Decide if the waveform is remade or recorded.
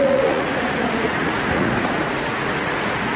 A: remade